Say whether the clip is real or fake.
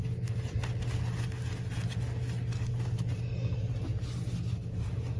real